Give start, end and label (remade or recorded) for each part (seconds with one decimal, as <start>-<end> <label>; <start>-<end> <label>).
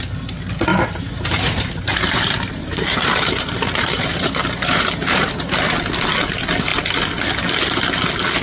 0.0-0.7 recorded; 0.7-5.3 remade; 5.3-8.4 recorded